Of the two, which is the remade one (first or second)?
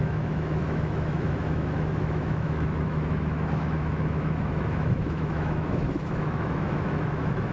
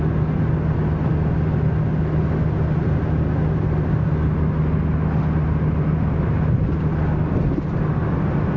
first